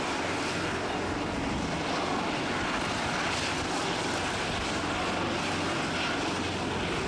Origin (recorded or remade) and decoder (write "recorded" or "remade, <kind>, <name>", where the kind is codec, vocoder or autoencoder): recorded